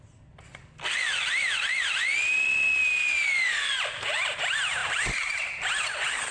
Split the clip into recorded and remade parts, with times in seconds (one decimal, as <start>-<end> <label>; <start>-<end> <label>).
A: 0.0-6.3 recorded